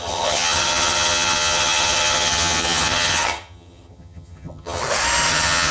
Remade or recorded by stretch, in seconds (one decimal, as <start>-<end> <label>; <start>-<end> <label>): 0.0-4.8 remade; 4.8-5.3 recorded; 5.3-5.7 remade